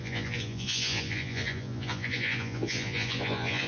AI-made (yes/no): yes